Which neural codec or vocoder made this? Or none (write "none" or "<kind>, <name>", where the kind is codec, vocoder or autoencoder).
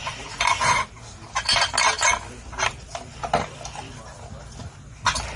none